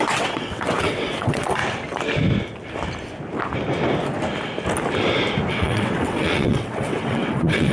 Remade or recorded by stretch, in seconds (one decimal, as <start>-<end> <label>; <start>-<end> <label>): 0.0-1.6 remade; 1.6-5.5 recorded; 5.5-7.7 remade